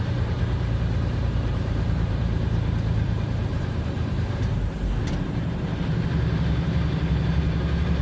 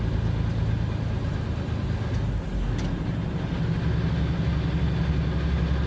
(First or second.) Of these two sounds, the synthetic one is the first